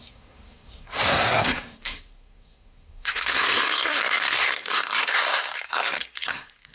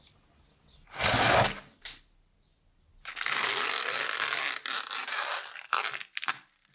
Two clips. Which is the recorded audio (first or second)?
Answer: second